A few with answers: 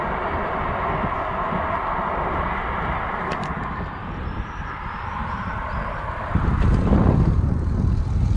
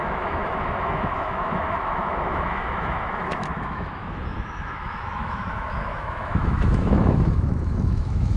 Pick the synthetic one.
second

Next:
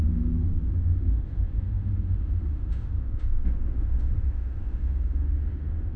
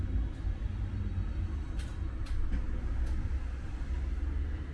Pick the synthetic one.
first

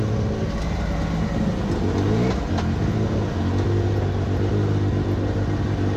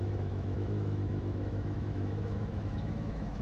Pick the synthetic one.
second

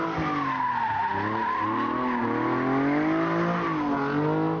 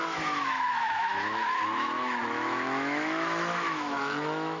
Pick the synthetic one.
second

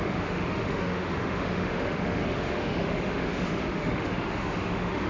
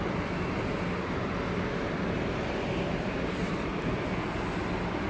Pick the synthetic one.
first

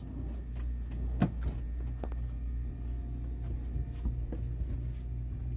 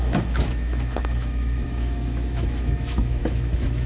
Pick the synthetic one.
second